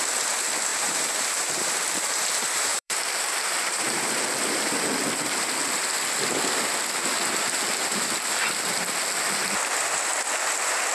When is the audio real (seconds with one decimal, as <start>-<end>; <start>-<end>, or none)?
0.0-0.7; 2.2-2.7; 4.7-10.9